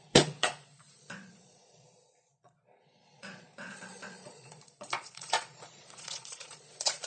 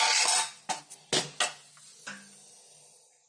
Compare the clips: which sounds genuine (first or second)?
second